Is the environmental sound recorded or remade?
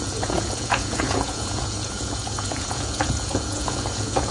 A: remade